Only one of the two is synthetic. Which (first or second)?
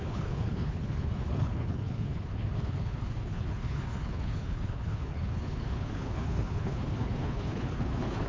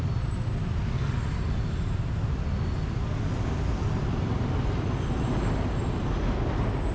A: first